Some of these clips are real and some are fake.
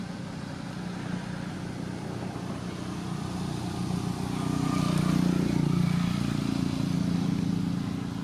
real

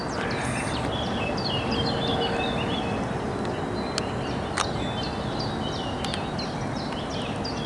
real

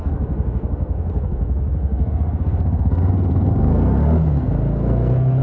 fake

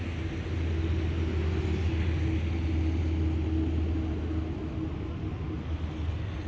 real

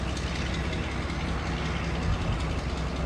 real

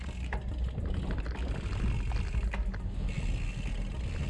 real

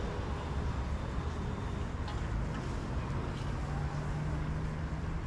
real